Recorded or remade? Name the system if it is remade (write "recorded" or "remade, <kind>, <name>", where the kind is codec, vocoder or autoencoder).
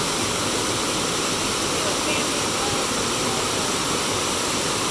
recorded